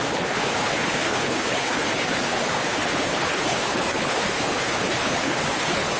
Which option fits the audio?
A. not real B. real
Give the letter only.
A